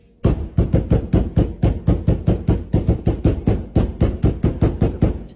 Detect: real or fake real